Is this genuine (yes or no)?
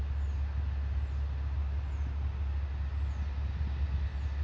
yes